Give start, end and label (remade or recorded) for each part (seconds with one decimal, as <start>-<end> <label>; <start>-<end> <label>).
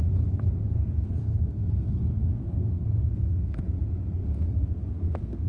0.0-0.6 recorded; 0.6-3.6 remade; 3.6-4.2 recorded; 4.2-5.5 remade